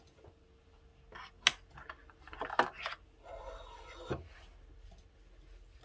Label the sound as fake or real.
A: real